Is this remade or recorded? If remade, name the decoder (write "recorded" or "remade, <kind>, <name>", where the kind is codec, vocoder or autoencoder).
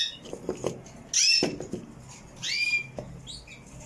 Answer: recorded